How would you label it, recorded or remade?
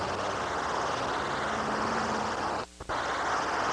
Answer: recorded